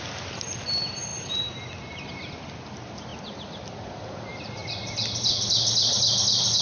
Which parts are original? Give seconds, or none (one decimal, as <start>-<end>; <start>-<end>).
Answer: 1.1-2.1; 3.1-3.8

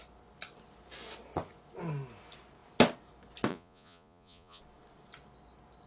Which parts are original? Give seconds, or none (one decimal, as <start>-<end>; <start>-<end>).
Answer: 0.0-3.5; 4.6-5.9

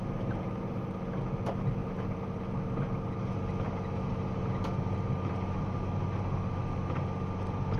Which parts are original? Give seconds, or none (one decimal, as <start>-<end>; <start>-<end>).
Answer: 0.0-7.8

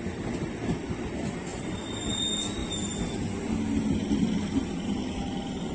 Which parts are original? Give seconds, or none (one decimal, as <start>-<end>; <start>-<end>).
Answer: 0.0-1.5; 2.2-5.7